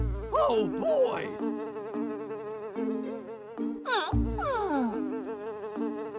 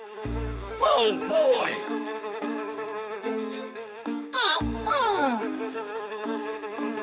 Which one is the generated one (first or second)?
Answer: second